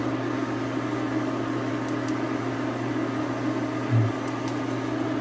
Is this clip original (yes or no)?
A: yes